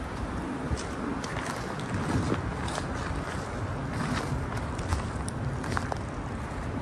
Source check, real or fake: real